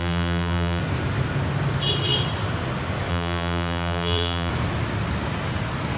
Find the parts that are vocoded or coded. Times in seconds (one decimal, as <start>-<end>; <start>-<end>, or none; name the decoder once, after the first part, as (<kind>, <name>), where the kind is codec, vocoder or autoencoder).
0.0-0.8 (vocoder, BigVGAN v2); 3.1-4.5